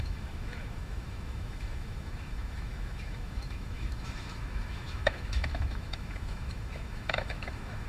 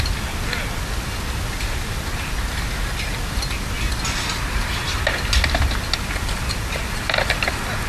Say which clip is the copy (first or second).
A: first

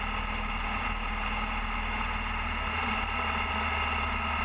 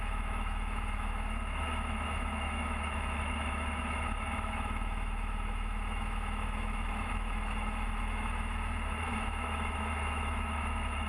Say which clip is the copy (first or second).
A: second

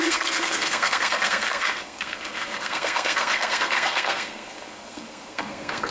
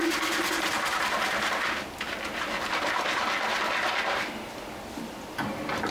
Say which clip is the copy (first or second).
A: first